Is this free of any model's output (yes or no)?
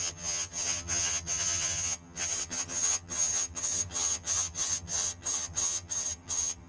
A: no